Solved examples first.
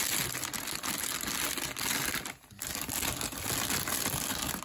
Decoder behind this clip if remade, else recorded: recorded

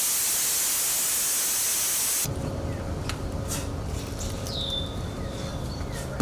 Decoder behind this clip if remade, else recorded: recorded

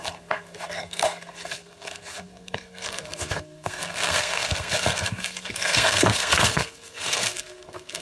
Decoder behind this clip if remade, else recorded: remade, codec, SNAC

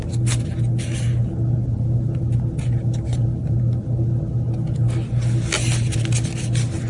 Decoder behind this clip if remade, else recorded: recorded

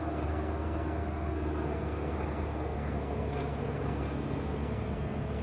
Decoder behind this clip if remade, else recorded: remade, codec, SNAC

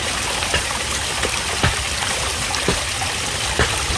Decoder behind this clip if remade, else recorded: recorded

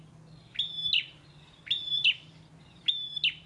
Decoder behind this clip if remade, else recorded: recorded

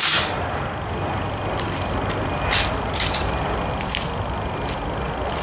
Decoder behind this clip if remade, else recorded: recorded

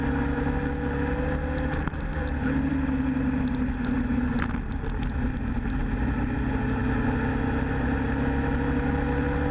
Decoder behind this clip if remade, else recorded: recorded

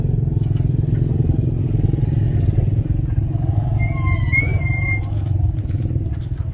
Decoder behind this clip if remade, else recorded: recorded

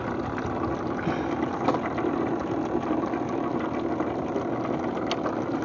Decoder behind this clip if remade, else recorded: recorded